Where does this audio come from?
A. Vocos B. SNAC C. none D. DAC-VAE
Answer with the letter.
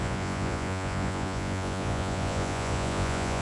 A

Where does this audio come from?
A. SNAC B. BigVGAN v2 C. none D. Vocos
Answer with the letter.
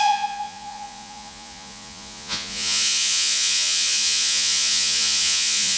D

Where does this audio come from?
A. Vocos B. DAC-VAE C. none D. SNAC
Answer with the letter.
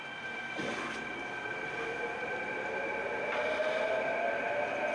C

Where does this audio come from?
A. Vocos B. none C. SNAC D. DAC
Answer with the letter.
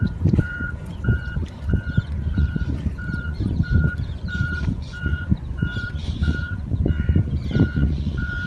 A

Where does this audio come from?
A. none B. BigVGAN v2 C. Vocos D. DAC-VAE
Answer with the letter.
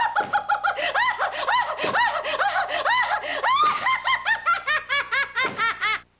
A